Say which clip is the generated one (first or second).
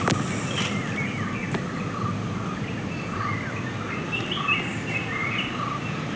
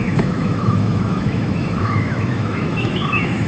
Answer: second